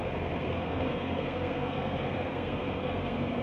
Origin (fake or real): fake